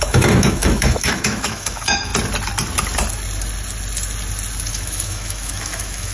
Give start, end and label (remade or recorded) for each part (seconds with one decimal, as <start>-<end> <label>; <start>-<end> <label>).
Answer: 0.0-2.1 remade; 2.1-4.7 recorded; 4.7-6.1 remade